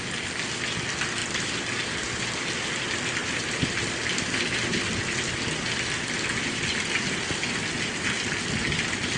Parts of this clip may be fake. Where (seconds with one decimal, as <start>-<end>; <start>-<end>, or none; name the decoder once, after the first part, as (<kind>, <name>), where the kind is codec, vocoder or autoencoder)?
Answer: 3.2-7.7 (vocoder, BigVGAN v2)